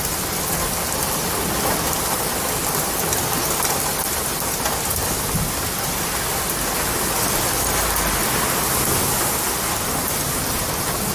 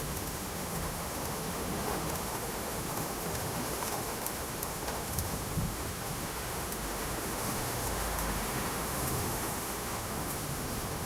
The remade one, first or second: second